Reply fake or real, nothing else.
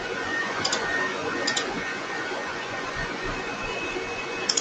fake